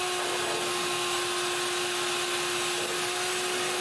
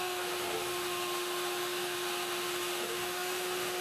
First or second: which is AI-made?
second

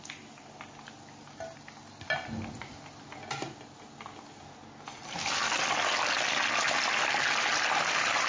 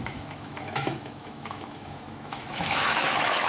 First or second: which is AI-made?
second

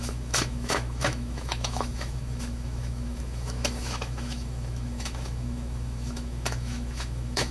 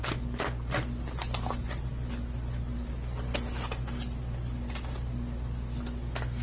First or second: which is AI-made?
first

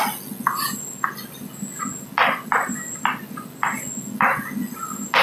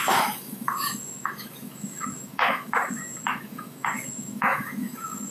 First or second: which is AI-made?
second